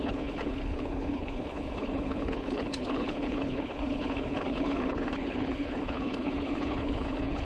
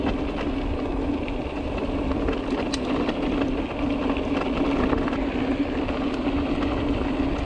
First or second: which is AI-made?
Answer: first